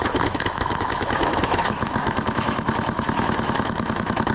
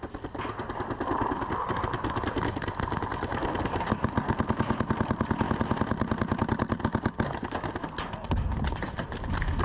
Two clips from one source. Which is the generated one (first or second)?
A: first